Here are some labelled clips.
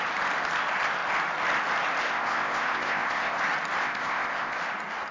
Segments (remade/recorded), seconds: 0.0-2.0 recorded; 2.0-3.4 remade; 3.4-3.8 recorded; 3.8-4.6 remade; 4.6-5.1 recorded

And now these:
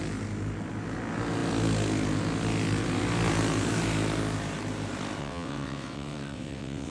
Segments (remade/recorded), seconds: 0.0-5.2 recorded; 5.2-6.9 remade

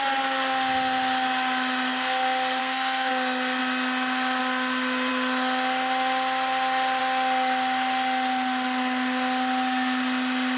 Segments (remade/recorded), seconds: 0.0-2.6 recorded; 2.6-3.1 remade; 3.1-10.6 recorded

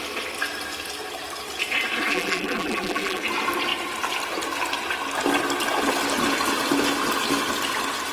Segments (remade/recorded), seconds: 0.0-2.1 recorded; 2.1-3.2 remade; 3.2-8.1 recorded

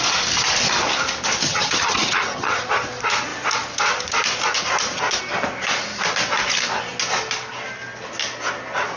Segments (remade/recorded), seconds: 0.0-1.4 recorded; 1.4-2.6 remade; 2.6-9.0 recorded

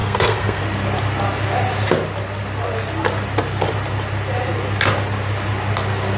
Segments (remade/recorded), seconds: 0.0-0.6 remade; 0.6-6.2 recorded

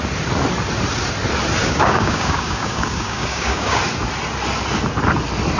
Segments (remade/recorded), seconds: 0.0-1.6 recorded; 1.6-3.8 remade; 3.8-5.6 recorded